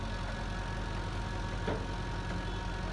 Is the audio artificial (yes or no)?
no